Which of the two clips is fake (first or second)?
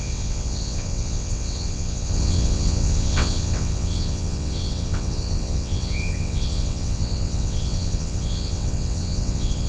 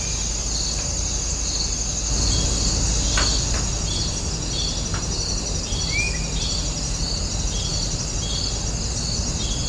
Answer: first